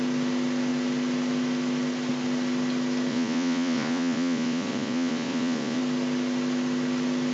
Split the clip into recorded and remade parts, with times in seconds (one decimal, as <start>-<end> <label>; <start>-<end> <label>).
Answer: 0.0-3.1 recorded; 3.1-5.8 remade; 5.8-7.3 recorded